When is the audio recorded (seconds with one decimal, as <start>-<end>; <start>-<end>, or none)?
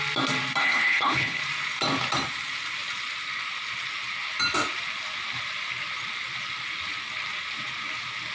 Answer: 0.0-0.6; 1.4-8.3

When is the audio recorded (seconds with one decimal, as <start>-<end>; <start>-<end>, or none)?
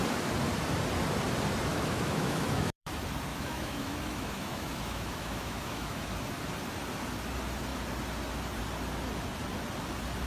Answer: 0.0-1.7; 2.9-3.3; 6.1-10.3